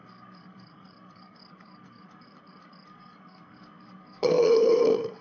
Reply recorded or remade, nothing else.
remade